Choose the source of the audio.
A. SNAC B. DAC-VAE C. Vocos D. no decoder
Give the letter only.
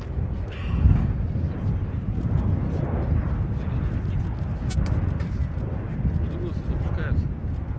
D